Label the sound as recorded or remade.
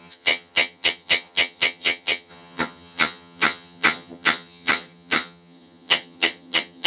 remade